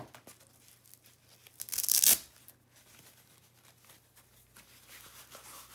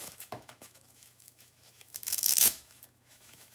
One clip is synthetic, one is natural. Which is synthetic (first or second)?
second